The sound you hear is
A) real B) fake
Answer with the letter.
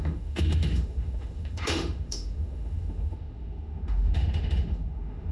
B